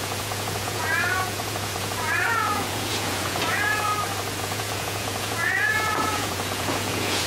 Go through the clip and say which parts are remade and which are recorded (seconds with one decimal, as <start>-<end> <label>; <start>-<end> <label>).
0.0-3.9 remade; 3.9-4.4 recorded; 4.4-7.3 remade